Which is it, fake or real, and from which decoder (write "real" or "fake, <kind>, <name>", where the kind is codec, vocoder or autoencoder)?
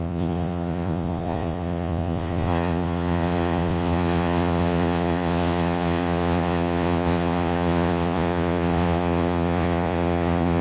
fake, vocoder, Vocos